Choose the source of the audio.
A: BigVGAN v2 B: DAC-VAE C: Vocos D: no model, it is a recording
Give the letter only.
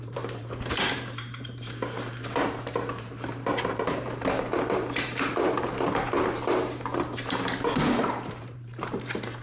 A